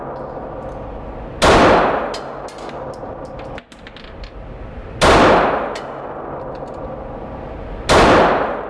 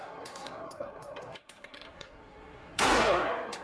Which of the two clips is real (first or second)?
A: first